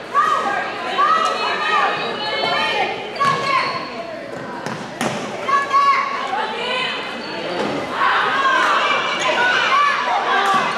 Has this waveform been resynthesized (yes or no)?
no